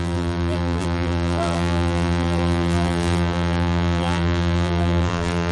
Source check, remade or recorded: remade